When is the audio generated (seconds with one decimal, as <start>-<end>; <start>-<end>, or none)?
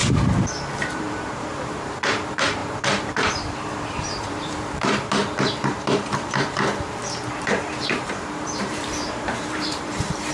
0.9-5.2; 7.3-10.3